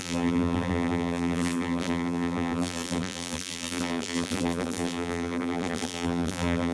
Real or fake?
fake